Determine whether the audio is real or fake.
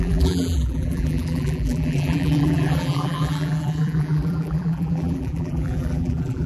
fake